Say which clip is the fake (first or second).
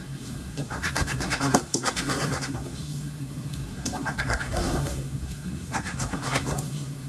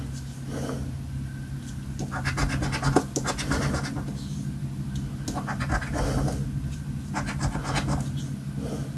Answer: first